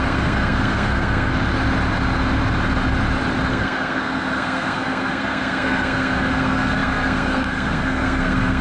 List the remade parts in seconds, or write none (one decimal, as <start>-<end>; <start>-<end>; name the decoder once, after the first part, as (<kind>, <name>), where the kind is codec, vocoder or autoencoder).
0.0-1.3 (codec, SNAC); 3.5-8.6

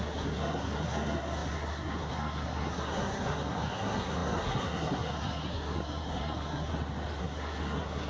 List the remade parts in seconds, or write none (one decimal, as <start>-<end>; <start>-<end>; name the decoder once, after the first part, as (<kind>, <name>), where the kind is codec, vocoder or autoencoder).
0.0-6.7 (codec, SNAC); 7.2-8.1

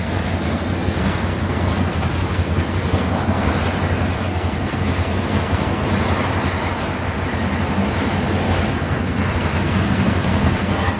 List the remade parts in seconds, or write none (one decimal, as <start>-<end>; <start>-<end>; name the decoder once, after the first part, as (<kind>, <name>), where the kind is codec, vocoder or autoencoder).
0.0-3.5 (codec, SNAC); 4.2-5.8; 8.7-11.0

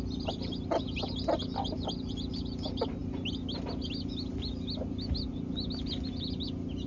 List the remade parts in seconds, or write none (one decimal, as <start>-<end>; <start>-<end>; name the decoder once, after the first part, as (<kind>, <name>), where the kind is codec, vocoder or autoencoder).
none

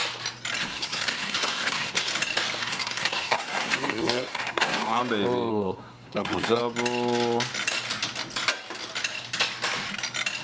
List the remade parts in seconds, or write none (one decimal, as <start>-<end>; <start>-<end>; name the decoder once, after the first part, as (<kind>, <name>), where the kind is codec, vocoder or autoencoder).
0.6-2.1 (codec, SNAC); 2.6-5.0; 5.5-6.6